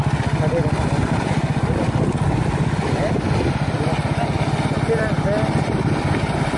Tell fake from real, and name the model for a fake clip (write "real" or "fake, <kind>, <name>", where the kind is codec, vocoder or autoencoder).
real